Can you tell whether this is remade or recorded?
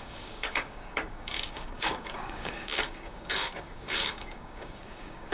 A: remade